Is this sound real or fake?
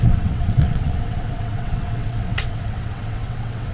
fake